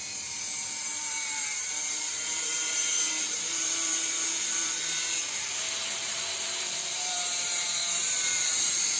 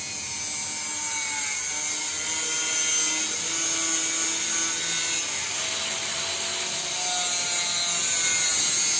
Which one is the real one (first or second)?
second